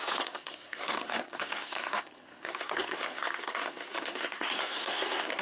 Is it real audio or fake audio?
fake